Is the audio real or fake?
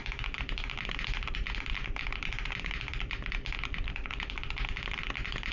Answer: fake